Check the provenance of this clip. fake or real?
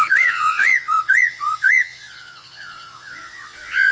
fake